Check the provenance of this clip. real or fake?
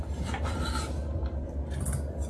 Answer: real